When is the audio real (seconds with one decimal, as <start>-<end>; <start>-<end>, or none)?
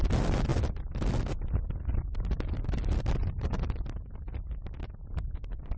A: 0.0-5.8